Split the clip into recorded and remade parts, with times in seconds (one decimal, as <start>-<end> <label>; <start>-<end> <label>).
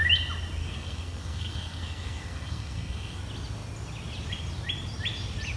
0.0-0.6 recorded; 0.6-3.2 remade; 3.2-5.6 recorded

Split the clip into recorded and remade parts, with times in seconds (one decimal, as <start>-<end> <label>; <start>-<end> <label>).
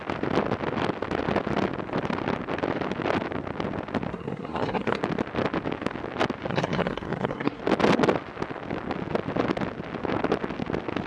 0.0-4.1 recorded; 4.1-5.0 remade; 5.0-6.5 recorded; 6.5-7.6 remade; 7.6-11.1 recorded